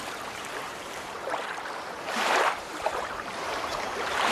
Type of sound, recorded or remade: remade